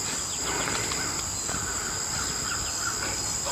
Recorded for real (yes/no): yes